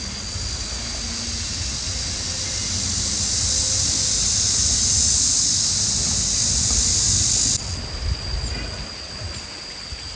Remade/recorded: recorded